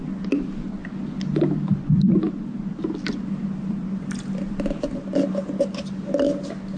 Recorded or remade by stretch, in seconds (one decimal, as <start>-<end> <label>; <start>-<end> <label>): 0.0-6.8 recorded